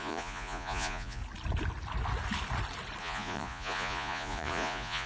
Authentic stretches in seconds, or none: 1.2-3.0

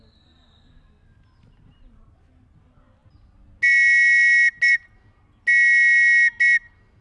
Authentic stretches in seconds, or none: 0.0-7.0